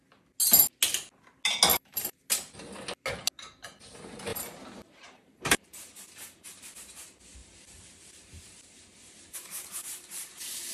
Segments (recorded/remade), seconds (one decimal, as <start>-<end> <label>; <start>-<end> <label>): 0.0-1.7 recorded; 1.7-2.3 remade; 2.3-4.3 recorded; 4.3-6.6 remade; 6.6-7.4 recorded; 7.4-10.7 remade